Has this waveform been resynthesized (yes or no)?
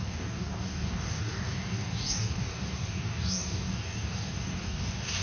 yes